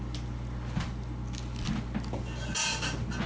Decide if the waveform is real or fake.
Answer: real